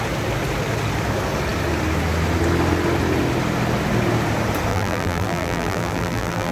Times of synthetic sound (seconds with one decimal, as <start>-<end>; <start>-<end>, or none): 4.7-6.5